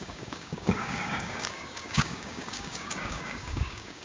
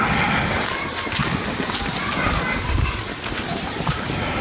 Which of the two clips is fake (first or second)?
first